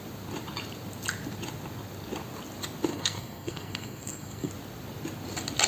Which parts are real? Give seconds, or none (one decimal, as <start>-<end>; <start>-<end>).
0.0-2.9; 4.5-5.7